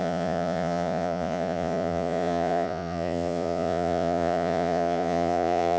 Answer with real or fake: fake